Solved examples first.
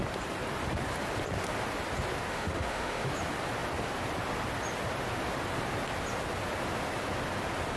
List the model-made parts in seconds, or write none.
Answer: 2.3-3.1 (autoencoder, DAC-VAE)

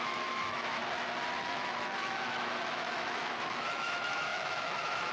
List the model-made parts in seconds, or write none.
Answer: 0.0-0.8 (autoencoder, DAC-VAE); 1.4-5.1